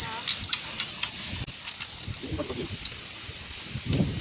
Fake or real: real